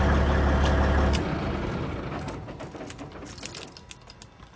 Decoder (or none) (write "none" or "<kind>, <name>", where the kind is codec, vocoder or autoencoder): none